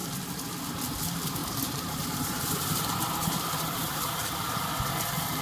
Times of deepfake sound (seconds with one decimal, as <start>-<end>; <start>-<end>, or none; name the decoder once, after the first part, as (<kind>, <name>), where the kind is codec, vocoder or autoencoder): 1.4-4.4 (vocoder, BigVGAN v2)